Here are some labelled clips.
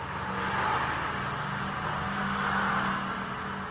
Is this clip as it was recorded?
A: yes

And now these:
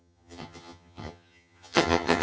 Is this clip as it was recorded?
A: no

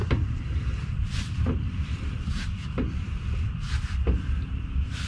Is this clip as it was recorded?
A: no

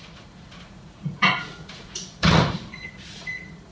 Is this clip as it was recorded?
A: no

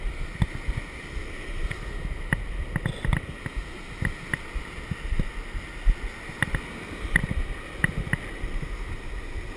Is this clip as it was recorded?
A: yes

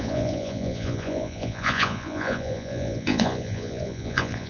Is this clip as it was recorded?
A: no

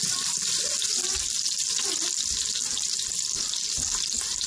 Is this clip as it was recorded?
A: yes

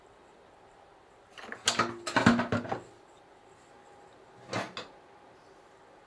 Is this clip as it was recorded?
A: yes